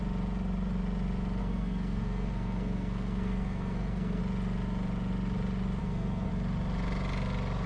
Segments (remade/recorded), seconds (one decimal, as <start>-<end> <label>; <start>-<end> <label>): 0.0-1.4 recorded; 1.4-4.2 remade; 4.2-5.8 recorded; 5.8-6.3 remade; 6.3-7.7 recorded